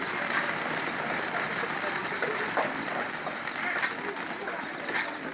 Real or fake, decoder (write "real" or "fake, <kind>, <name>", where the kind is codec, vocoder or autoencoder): real